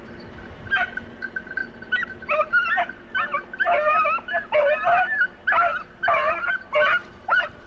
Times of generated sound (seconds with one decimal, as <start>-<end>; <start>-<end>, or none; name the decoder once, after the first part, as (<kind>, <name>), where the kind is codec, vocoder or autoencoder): none